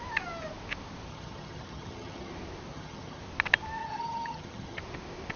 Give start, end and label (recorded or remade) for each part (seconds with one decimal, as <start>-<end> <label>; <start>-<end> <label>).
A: 0.0-1.1 recorded; 1.1-2.3 remade; 2.3-2.7 recorded; 2.7-3.2 remade; 3.2-3.8 recorded; 3.8-4.8 remade; 4.8-5.4 recorded